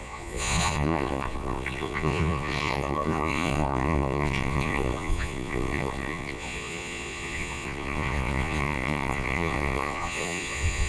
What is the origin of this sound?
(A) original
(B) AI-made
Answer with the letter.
B